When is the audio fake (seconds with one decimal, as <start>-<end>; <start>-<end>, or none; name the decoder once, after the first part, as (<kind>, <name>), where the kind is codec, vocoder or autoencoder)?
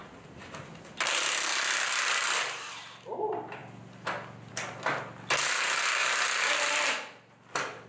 none